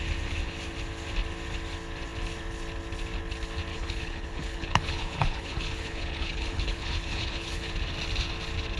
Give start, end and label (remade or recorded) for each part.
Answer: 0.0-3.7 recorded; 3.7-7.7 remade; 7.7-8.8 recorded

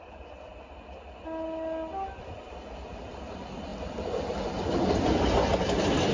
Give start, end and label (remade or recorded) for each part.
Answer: 0.0-0.5 remade; 0.5-2.4 recorded; 2.4-3.7 remade; 3.7-4.6 recorded; 4.6-6.1 remade

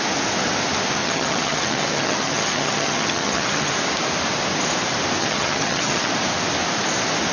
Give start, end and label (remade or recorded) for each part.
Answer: 0.0-1.0 recorded; 1.0-3.7 remade; 3.7-5.2 recorded; 5.2-6.1 remade; 6.1-7.3 recorded

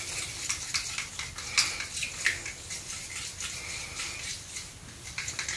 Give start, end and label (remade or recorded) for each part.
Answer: 0.0-5.6 recorded

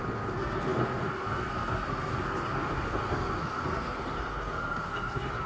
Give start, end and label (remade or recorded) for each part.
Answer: 0.0-5.5 remade

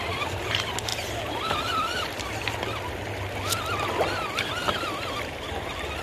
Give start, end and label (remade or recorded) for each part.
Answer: 0.0-6.0 recorded

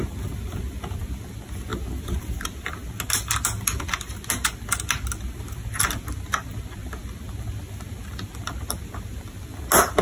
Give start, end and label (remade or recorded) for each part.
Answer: 0.0-10.0 recorded